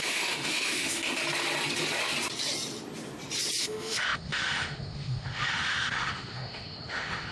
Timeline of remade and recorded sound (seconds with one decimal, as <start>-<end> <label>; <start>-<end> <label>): 0.0-1.2 remade; 1.2-3.6 recorded; 3.6-7.3 remade